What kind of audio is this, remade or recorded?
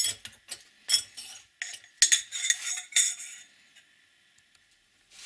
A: recorded